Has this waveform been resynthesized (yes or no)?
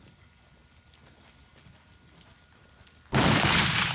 no